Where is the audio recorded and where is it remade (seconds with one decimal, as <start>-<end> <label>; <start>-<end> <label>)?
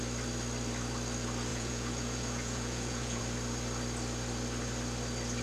0.0-1.5 recorded; 1.5-3.2 remade; 3.2-5.4 recorded